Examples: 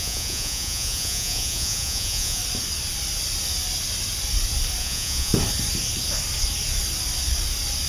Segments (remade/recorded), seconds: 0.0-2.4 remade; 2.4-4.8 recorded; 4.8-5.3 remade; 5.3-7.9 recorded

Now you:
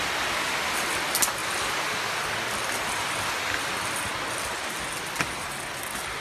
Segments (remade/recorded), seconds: 0.0-6.2 recorded

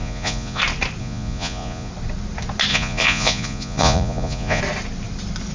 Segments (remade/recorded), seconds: 0.0-0.6 remade; 0.6-1.0 recorded; 1.0-1.9 remade; 1.9-2.7 recorded; 2.7-4.6 remade; 4.6-5.5 recorded

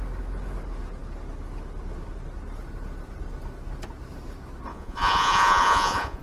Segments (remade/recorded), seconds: 0.0-4.7 recorded; 4.7-6.2 remade

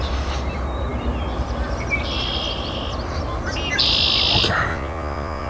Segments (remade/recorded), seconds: 0.0-4.7 recorded; 4.7-5.5 remade

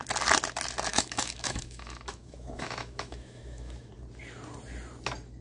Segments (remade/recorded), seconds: 0.0-0.9 recorded; 0.9-3.9 remade; 3.9-5.4 recorded

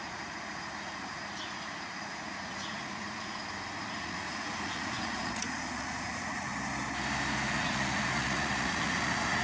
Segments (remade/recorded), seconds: 0.0-3.4 remade; 3.4-4.0 recorded; 4.0-6.5 remade; 6.5-7.5 recorded; 7.5-9.4 remade

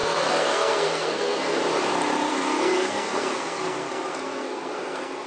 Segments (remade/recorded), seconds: 0.0-1.6 remade; 1.6-2.3 recorded; 2.3-5.3 remade